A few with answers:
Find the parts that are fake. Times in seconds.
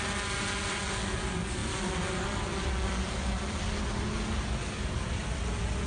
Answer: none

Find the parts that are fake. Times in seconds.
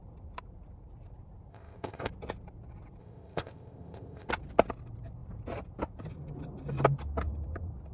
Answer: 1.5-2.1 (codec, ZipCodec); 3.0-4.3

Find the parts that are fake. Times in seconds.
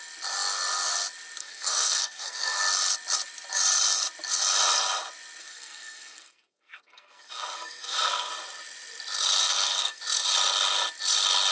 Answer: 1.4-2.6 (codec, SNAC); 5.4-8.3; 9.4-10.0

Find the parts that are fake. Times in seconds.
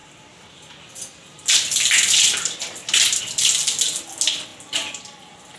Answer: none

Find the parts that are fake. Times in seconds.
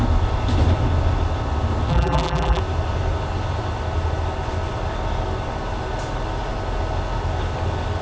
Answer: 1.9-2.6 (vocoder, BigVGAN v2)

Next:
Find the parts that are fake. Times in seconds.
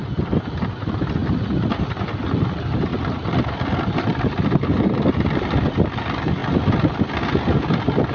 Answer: none